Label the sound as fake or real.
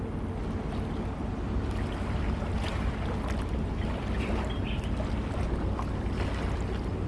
real